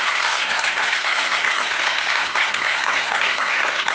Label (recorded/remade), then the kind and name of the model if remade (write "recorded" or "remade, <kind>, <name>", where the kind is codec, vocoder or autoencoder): remade, codec, SNAC